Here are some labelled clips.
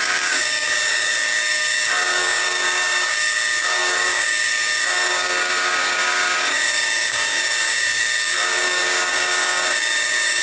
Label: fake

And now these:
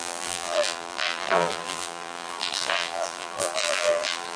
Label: fake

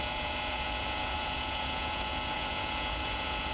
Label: fake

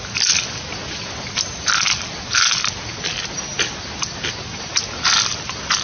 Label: real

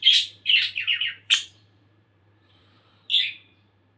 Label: fake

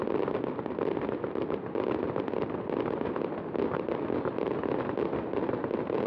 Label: real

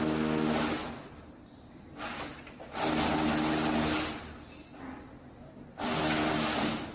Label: real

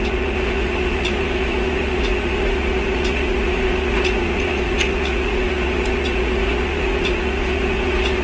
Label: fake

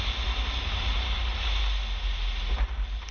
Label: real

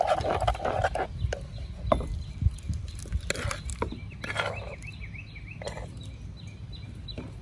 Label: real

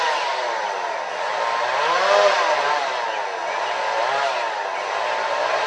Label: real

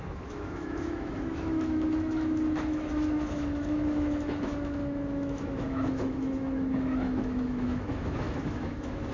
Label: fake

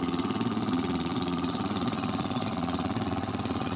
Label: fake